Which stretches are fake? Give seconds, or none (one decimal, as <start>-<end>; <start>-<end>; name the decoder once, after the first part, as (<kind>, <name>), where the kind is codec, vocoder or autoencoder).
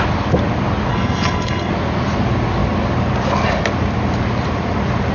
0.9-1.7 (codec, HILCodec)